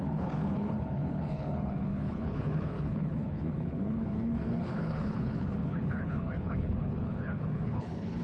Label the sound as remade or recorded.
remade